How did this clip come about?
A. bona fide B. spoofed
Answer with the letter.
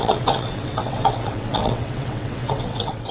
B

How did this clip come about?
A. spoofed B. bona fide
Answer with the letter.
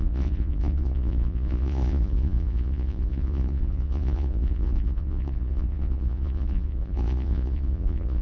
A